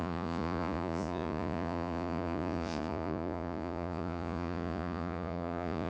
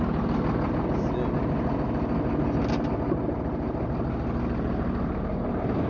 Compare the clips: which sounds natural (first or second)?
second